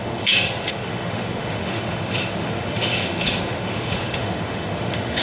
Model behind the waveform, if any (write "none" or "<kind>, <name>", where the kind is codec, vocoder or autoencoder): autoencoder, DAC-VAE